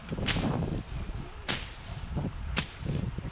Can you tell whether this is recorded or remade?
remade